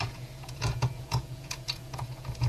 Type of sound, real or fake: fake